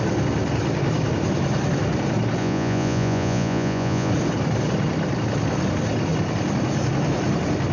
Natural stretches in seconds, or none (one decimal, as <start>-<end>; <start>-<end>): 0.0-2.4; 4.1-7.7